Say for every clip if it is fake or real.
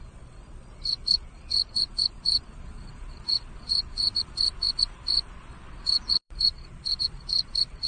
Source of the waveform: fake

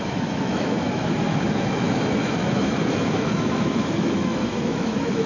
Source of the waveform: fake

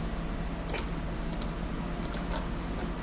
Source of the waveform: real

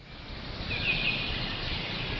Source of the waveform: real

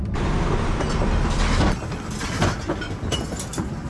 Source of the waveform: real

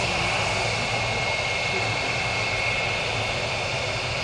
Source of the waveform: real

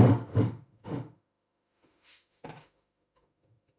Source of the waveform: fake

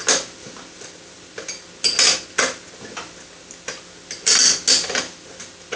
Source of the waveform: real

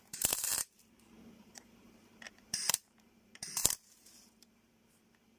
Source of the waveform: fake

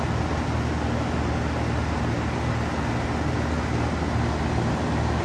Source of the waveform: real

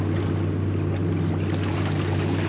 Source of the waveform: real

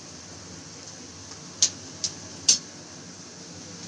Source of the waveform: real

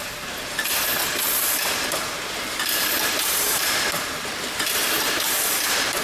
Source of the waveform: fake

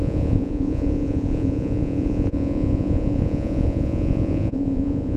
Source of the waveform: fake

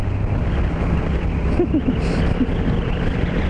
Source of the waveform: real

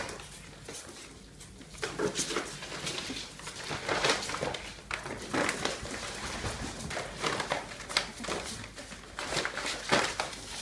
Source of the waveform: real